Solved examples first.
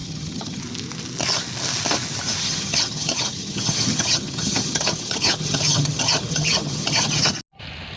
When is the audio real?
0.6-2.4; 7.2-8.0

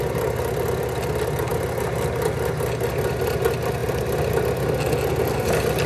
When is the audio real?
0.0-5.9

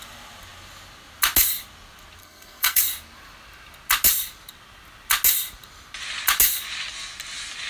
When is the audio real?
0.0-2.2; 2.8-7.7

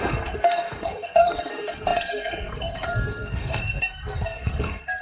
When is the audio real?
none

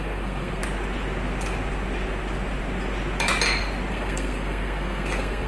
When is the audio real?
0.6-3.9